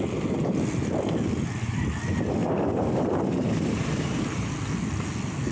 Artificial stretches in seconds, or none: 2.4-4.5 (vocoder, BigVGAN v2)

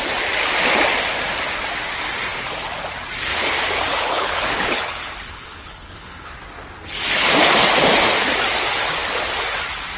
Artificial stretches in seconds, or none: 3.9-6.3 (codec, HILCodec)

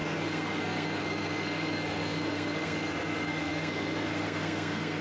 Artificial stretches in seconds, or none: 0.0-5.0 (codec, SNAC)

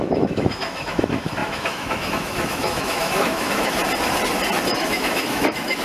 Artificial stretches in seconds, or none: 0.0-3.8 (autoencoder, DAC-VAE); 4.7-5.8

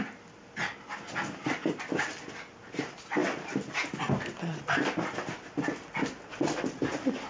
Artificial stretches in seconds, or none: none